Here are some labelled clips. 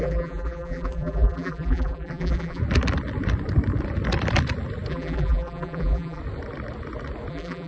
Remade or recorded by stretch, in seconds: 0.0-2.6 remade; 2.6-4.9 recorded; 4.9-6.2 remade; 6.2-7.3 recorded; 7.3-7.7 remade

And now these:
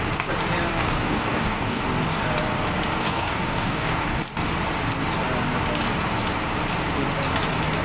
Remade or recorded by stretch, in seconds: 0.0-0.7 recorded; 0.7-1.8 remade; 1.8-3.0 recorded; 3.0-4.2 remade; 4.2-7.8 recorded

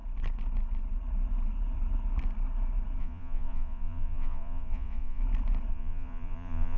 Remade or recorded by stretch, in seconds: 0.0-3.0 recorded; 3.0-5.2 remade; 5.2-5.7 recorded; 5.7-6.8 remade

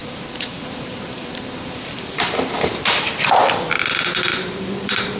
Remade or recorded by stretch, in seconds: 0.0-3.1 remade; 3.1-4.3 recorded; 4.3-5.2 remade

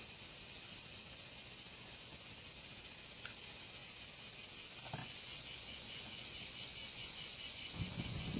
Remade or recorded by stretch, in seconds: 0.0-0.9 recorded; 0.9-2.5 remade; 2.5-5.0 recorded; 5.0-8.4 remade

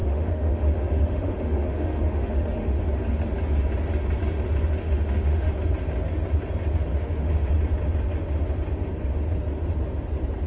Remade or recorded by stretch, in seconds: 0.0-2.8 remade; 2.8-4.8 recorded; 4.8-5.5 remade; 5.5-6.9 recorded; 6.9-7.5 remade; 7.5-10.5 recorded

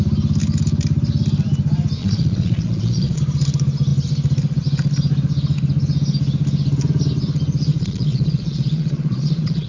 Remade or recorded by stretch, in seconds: 0.0-2.0 recorded; 2.0-3.2 remade; 3.2-7.7 recorded; 7.7-9.7 remade